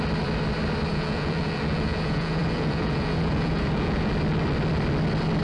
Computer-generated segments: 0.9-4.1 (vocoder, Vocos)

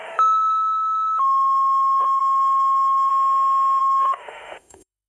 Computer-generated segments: 0.0-3.1 (autoencoder, DAC-VAE); 3.8-5.1

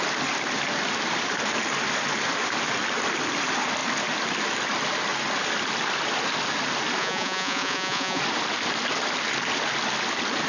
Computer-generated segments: 7.0-8.2 (vocoder, Vocos)

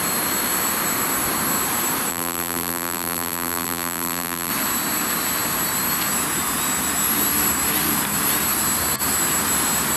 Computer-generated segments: 2.1-4.5 (vocoder, BigVGAN v2)

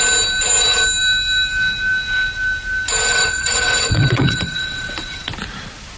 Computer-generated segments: 3.1-5.3 (vocoder, WaveNeXt)

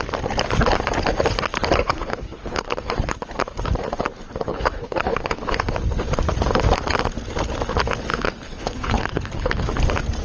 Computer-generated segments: 1.8-2.9 (codec, HILCodec); 4.5-5.7; 8.1-9.7

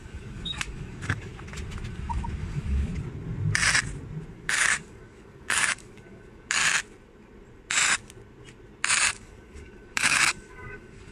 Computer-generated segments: 0.0-1.3 (codec, DAC); 2.4-2.9; 4.3-6.6; 9.1-11.1